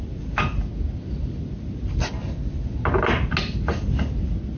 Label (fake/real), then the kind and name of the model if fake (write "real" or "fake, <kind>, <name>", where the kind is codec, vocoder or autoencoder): real